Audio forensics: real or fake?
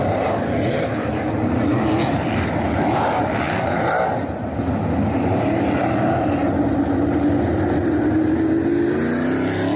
real